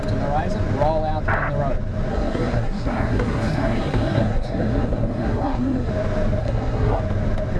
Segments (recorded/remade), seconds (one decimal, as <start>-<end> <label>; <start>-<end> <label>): 0.0-2.1 recorded; 2.1-5.9 remade; 5.9-6.4 recorded; 6.4-7.0 remade; 7.0-7.6 recorded